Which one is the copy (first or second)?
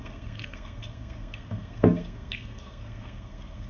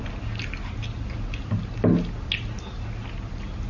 first